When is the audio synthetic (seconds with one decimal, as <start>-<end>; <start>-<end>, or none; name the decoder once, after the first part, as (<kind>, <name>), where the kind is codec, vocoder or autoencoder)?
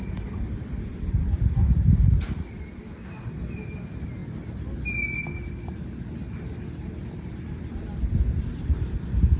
none